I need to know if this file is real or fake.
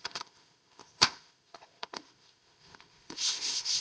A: fake